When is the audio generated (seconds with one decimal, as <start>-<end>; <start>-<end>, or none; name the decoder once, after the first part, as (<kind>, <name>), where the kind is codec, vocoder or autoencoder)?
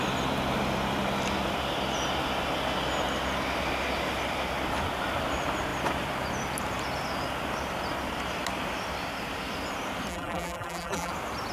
10.1-11.1 (vocoder, BigVGAN v2)